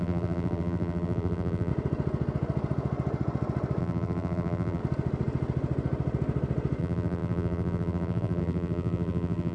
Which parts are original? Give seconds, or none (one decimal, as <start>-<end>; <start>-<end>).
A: 1.7-3.8; 4.8-6.8